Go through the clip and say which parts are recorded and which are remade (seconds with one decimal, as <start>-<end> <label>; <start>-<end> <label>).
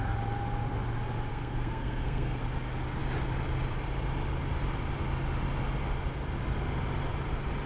0.0-1.3 recorded; 1.3-2.4 remade; 2.4-7.7 recorded